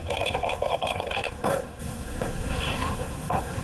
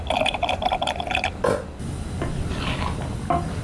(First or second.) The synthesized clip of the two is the first